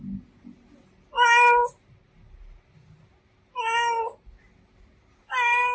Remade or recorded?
recorded